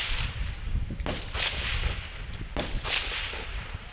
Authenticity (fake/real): real